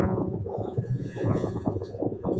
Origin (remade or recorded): remade